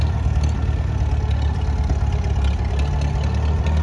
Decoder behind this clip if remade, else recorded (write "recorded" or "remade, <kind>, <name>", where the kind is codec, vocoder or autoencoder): recorded